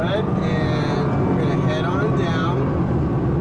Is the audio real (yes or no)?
yes